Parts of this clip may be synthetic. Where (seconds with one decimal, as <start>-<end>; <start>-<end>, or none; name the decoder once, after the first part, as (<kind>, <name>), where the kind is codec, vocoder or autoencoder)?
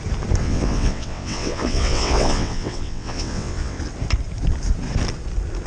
0.4-3.8 (vocoder, WaveNeXt)